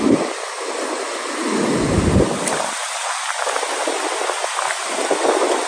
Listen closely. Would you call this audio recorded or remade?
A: recorded